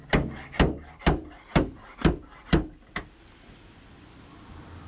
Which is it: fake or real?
real